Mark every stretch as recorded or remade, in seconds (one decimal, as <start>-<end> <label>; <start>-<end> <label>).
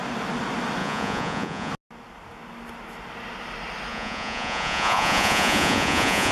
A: 0.0-0.8 recorded; 0.8-1.7 remade; 1.7-3.9 recorded; 3.9-6.3 remade